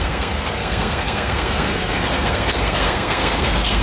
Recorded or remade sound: remade